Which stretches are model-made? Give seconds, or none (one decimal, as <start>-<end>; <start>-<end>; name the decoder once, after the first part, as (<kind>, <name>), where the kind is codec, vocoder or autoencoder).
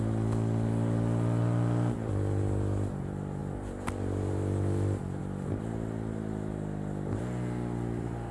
none